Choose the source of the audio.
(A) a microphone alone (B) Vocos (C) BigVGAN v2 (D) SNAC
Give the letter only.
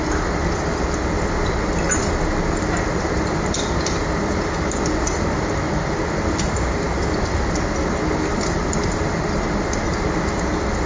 A